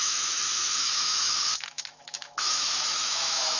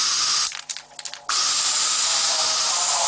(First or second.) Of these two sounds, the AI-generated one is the first